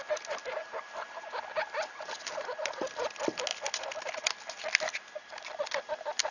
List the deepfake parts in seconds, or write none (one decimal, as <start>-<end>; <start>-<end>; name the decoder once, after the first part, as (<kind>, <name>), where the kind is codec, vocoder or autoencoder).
3.5-5.8 (vocoder, BigVGAN v2)